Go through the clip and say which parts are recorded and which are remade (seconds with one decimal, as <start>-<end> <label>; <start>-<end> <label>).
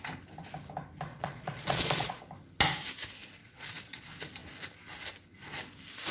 0.0-1.1 recorded; 1.1-2.2 remade; 2.2-3.4 recorded; 3.4-4.0 remade; 4.0-6.1 recorded